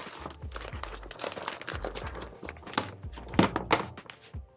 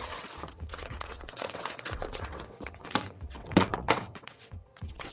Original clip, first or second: first